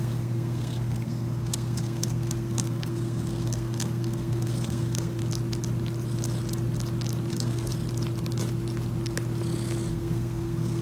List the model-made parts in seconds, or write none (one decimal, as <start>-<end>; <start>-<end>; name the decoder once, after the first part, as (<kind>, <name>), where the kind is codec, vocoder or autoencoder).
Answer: 0.0-5.2 (codec, SNAC); 7.3-7.7; 9.9-10.8